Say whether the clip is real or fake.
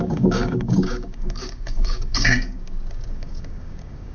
fake